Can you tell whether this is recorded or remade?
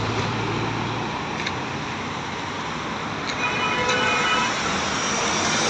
remade